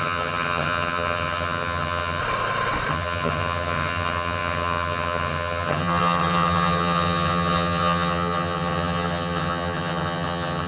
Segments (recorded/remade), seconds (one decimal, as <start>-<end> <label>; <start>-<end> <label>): 0.0-2.2 remade; 2.2-2.9 recorded; 2.9-10.7 remade